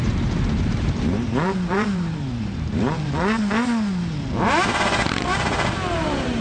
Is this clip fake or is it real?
fake